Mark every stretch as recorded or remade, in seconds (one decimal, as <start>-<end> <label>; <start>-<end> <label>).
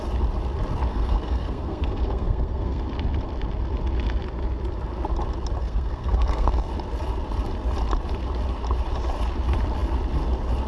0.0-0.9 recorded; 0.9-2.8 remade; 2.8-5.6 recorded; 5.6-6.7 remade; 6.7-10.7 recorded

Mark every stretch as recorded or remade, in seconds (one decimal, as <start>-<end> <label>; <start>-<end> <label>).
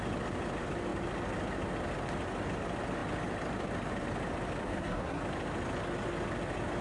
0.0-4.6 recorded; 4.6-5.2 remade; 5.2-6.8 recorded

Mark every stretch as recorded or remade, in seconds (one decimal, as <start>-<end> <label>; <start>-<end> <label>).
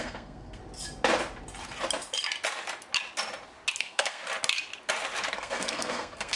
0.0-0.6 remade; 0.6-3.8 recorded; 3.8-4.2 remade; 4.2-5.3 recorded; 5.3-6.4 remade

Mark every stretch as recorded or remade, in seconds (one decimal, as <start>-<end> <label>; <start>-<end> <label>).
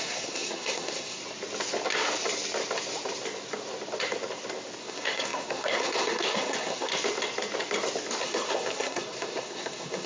0.0-1.2 remade; 1.2-4.8 recorded; 4.8-6.9 remade; 6.9-8.2 recorded; 8.2-10.1 remade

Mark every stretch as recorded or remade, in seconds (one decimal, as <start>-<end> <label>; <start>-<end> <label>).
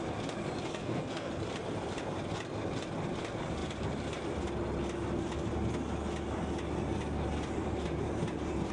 0.0-0.7 recorded; 0.7-1.3 remade; 1.3-8.7 recorded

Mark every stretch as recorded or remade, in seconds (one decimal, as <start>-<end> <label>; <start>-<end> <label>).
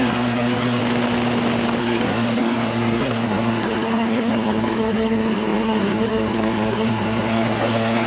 0.0-0.8 remade; 0.8-1.8 recorded; 1.8-8.1 remade